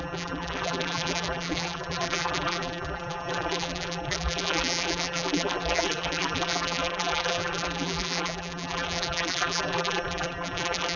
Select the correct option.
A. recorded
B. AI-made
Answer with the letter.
B